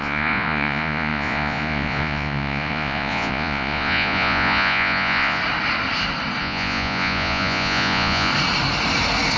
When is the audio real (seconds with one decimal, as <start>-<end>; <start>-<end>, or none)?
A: 5.4-6.4; 8.3-9.4